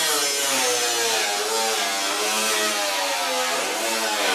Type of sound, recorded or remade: recorded